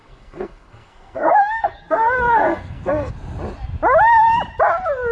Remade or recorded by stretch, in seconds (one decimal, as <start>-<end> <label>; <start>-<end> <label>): 0.0-3.1 remade; 3.1-5.1 recorded